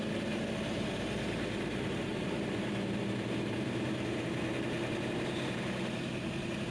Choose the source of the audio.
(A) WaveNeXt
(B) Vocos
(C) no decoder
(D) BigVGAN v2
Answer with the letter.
D